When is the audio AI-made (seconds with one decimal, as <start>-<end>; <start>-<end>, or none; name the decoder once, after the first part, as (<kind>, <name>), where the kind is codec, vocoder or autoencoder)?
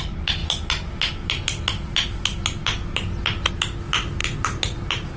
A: none